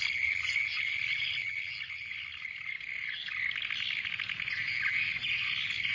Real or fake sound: real